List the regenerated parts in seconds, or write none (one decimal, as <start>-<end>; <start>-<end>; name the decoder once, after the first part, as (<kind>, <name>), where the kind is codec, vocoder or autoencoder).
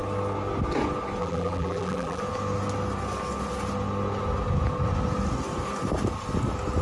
1.2-2.2 (vocoder, BigVGAN v2)